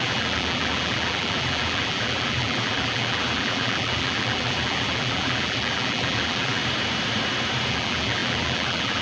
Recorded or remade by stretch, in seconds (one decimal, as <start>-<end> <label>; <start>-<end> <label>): 0.0-6.6 remade; 6.6-7.7 recorded; 7.7-9.0 remade